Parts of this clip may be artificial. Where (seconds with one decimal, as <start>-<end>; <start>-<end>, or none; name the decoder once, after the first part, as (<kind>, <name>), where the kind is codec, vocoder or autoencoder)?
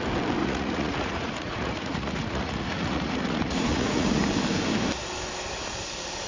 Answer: 0.4-4.2 (vocoder, Vocos)